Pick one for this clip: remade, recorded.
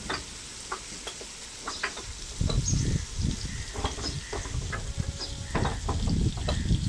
recorded